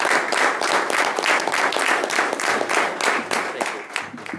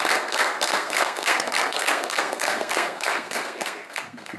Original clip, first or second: first